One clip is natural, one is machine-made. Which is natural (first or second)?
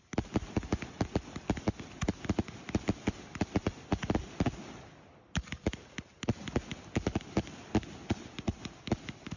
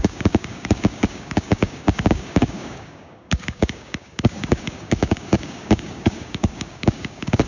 first